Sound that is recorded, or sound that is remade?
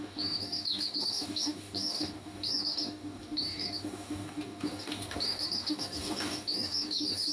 remade